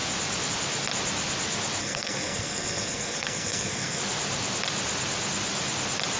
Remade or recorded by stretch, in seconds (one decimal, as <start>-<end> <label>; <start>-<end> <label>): 0.0-1.8 recorded; 1.8-4.0 remade; 4.0-6.2 recorded